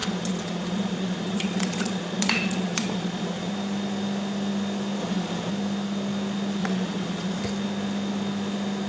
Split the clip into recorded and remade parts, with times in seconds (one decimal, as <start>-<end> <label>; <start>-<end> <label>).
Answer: 0.0-3.5 remade; 3.5-5.0 recorded; 5.0-5.5 remade; 5.5-6.6 recorded; 6.6-7.4 remade; 7.4-8.9 recorded